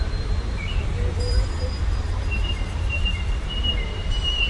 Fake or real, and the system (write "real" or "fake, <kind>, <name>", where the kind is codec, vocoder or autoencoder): fake, vocoder, BigVGAN v2